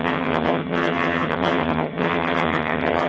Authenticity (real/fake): fake